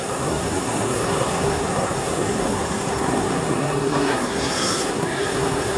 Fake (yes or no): yes